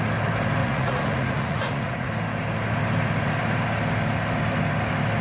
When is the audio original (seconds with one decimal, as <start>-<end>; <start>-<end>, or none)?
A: 0.0-0.6; 2.1-5.2